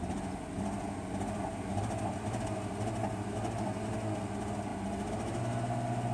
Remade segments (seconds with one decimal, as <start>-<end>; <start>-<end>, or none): 1.7-2.4